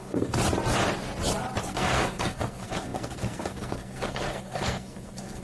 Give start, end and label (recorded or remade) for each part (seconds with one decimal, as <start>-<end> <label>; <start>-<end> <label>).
0.0-0.4 remade; 0.4-1.6 recorded; 1.6-5.4 remade